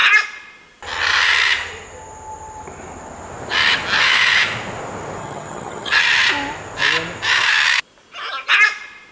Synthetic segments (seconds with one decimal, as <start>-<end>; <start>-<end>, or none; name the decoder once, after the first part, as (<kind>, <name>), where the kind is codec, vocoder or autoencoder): 5.2-6.0 (vocoder, HiFi-GAN)